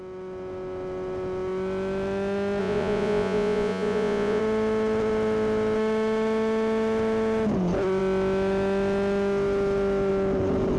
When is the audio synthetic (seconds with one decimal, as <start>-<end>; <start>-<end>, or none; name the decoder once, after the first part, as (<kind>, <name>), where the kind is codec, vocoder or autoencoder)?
2.6-4.4 (vocoder, Vocos)